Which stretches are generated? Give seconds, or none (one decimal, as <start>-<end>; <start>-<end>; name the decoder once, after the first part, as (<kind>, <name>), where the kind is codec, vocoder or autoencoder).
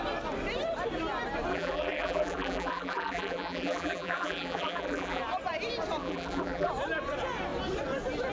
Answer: 1.5-5.2 (vocoder, BigVGAN v2); 6.0-6.7